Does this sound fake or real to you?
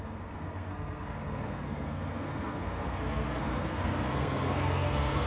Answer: fake